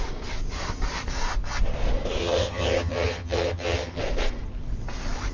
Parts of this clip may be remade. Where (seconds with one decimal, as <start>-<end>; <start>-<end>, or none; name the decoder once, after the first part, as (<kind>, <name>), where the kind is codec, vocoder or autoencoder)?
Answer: 2.2-4.0 (vocoder, HiFi-GAN)